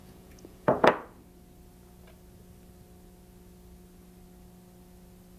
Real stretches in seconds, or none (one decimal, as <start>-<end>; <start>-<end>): 0.9-5.4